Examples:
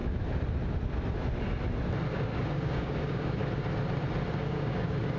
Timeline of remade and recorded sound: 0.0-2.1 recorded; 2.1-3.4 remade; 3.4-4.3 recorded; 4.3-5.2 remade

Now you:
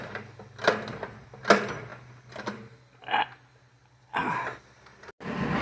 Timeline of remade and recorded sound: 0.0-4.2 recorded; 4.2-4.8 remade; 4.8-5.6 recorded

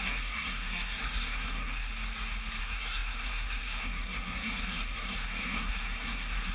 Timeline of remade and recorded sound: 0.0-1.9 remade; 1.9-2.6 recorded; 2.6-6.5 remade

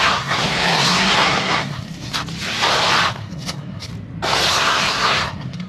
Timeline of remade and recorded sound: 0.0-2.2 remade; 2.2-3.1 recorded; 3.1-3.9 remade; 3.9-4.5 recorded; 4.5-5.7 remade

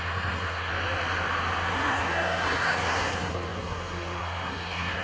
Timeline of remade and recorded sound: 0.0-0.7 remade; 0.7-1.7 recorded; 1.7-5.0 remade

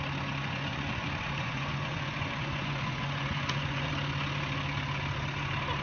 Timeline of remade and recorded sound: 0.0-0.4 recorded; 0.4-3.9 remade; 3.9-5.8 recorded

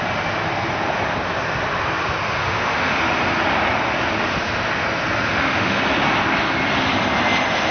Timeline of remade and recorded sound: 0.0-2.4 recorded; 2.4-3.0 remade; 3.0-5.3 recorded; 5.3-5.8 remade; 5.8-7.7 recorded